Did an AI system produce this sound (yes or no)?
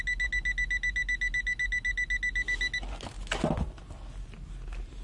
no